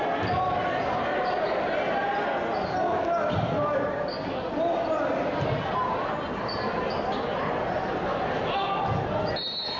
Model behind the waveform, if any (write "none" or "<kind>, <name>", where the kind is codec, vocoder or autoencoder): none